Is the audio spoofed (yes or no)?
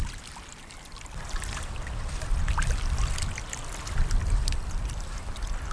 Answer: no